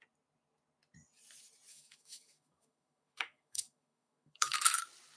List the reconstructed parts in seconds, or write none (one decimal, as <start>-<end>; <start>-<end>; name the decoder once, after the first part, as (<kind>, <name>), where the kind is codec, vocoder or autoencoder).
1.7-4.8 (autoencoder, DAC-VAE)